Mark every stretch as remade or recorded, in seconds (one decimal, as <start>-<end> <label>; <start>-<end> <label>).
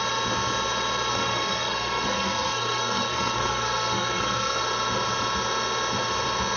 0.0-1.1 recorded; 1.1-4.6 remade; 4.6-6.6 recorded